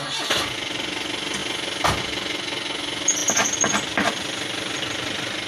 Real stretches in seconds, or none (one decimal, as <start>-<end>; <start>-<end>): 0.0-3.2